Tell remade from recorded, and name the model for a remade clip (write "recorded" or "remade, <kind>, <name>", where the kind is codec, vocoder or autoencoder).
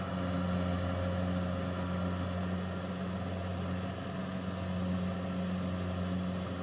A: recorded